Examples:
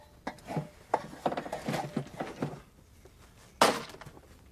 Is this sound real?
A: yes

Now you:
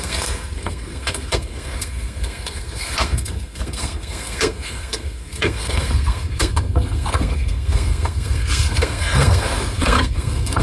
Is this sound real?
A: no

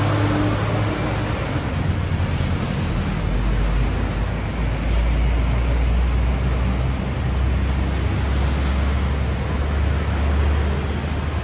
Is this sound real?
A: yes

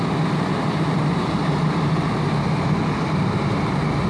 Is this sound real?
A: yes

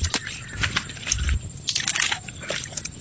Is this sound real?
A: no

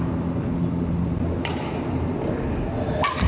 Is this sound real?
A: yes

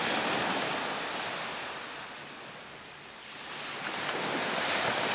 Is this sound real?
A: yes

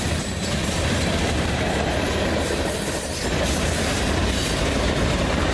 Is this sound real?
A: no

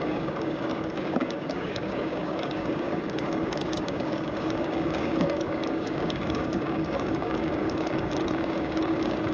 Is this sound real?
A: no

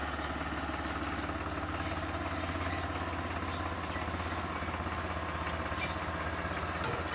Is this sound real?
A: yes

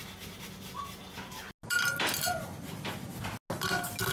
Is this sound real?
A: yes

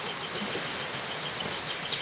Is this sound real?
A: yes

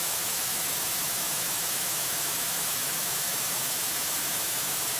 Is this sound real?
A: no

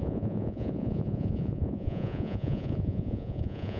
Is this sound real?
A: no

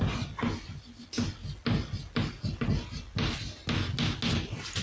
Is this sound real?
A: yes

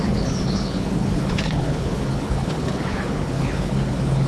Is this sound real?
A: no